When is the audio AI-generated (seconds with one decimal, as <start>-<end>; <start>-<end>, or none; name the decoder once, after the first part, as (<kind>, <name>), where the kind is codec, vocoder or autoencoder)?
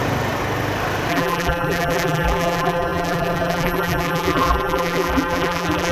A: 1.1-5.9 (vocoder, BigVGAN v2)